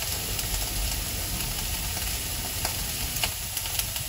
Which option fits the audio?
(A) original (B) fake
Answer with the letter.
A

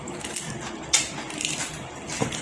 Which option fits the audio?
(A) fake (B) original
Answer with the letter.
A